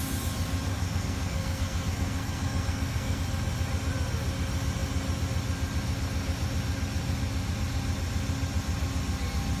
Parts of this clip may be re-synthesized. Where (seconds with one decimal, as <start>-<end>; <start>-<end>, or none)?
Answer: 0.7-3.2